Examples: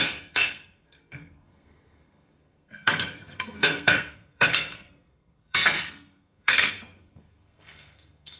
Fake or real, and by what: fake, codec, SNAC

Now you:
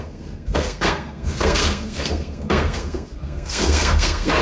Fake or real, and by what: fake, codec, SNAC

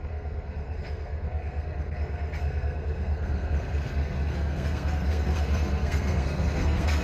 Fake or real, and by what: fake, codec, SNAC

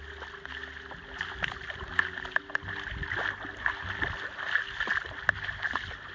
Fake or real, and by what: real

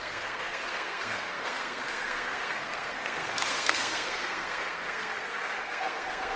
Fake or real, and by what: fake, codec, SNAC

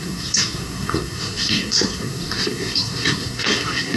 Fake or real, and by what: fake, codec, SNAC